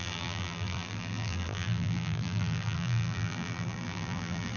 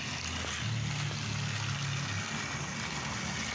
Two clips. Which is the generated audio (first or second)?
first